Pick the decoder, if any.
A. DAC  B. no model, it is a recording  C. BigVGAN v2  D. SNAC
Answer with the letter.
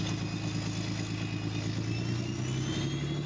B